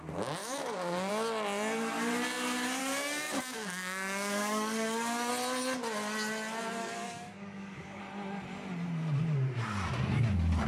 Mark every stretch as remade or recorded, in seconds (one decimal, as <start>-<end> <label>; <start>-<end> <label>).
0.0-0.4 recorded; 0.4-1.1 remade; 1.1-2.8 recorded; 2.8-5.3 remade; 5.3-6.8 recorded; 6.8-8.0 remade; 8.0-10.7 recorded